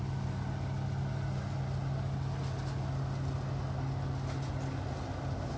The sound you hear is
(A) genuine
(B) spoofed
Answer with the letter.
A